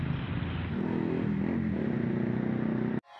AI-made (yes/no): no